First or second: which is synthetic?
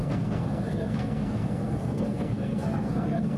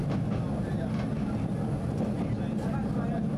first